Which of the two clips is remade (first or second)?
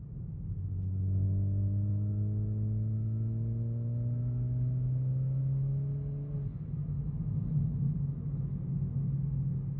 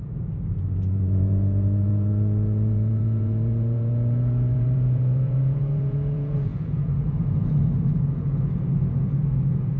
second